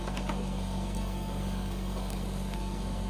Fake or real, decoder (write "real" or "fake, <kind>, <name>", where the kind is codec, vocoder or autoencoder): fake, codec, SNAC